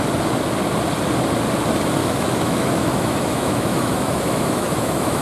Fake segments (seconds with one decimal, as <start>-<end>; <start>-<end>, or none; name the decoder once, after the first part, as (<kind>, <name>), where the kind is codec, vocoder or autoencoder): 2.0-5.2 (autoencoder, DAC-VAE)